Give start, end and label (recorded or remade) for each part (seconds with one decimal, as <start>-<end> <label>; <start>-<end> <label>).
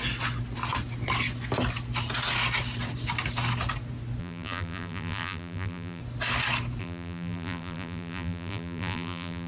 0.0-4.2 recorded; 4.2-6.0 remade; 6.0-6.8 recorded; 6.8-9.5 remade